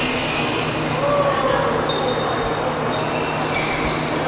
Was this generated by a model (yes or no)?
no